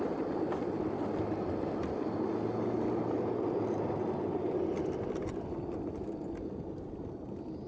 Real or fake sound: real